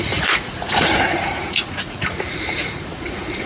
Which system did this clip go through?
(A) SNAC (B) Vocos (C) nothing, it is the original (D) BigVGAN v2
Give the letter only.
B